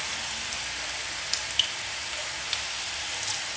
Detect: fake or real real